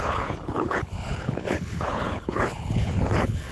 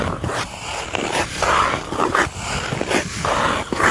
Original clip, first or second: second